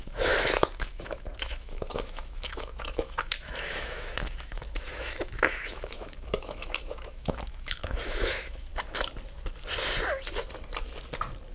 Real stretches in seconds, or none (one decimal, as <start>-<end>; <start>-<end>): 8.7-11.5